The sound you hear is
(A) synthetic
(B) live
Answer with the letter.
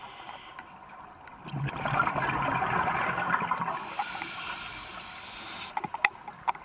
B